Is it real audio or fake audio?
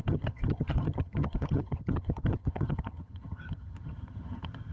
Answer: fake